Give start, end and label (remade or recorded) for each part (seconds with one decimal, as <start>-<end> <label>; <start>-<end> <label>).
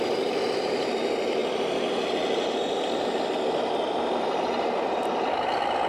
0.0-5.9 recorded